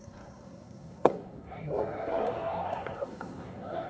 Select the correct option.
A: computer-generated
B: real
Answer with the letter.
A